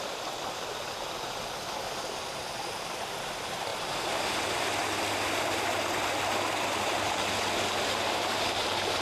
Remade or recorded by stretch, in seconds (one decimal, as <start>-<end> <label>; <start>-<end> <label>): 0.0-9.0 recorded

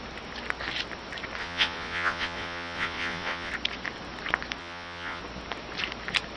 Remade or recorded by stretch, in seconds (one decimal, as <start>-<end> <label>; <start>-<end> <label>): 0.0-1.4 recorded; 1.4-3.5 remade; 3.5-4.6 recorded; 4.6-5.2 remade; 5.2-6.4 recorded

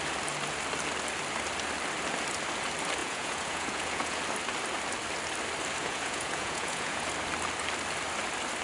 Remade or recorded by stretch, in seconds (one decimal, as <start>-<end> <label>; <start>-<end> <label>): 0.0-3.0 recorded; 3.0-4.2 remade; 4.2-5.8 recorded; 5.8-7.1 remade; 7.1-8.6 recorded

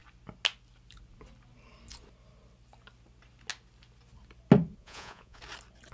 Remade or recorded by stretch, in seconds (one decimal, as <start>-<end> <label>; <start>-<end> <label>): 0.0-4.8 recorded; 4.8-5.4 remade; 5.4-5.9 recorded

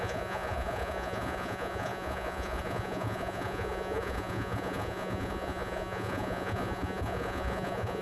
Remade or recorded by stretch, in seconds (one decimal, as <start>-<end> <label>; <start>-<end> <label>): 0.0-8.0 remade

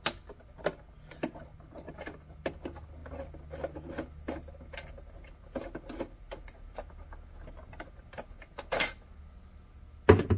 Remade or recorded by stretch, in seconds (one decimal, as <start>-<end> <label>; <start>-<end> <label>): 0.0-10.4 recorded